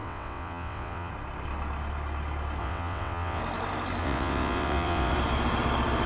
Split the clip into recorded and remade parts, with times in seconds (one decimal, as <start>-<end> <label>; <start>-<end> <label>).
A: 0.0-1.1 remade; 1.1-2.6 recorded; 2.6-3.4 remade; 3.4-4.0 recorded; 4.0-5.1 remade; 5.1-6.1 recorded